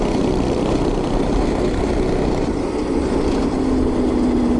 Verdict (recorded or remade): recorded